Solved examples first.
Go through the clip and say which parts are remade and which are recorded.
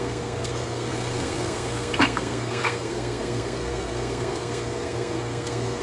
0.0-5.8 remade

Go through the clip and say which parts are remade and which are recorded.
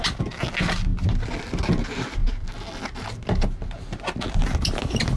0.0-5.2 recorded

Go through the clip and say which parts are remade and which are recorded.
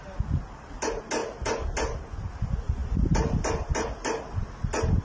0.0-5.0 recorded